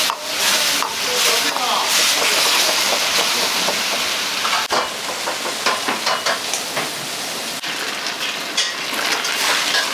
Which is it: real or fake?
real